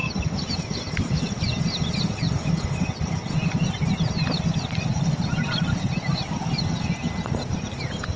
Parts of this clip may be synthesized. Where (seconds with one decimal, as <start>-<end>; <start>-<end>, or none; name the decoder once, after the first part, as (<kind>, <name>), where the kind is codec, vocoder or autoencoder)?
none